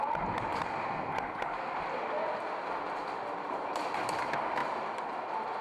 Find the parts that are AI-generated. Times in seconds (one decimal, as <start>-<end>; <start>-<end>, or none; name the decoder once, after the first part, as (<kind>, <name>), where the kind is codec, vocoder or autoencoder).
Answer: none